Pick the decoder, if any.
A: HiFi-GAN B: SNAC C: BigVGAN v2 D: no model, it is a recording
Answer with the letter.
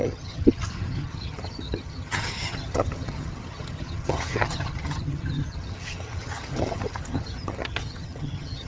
A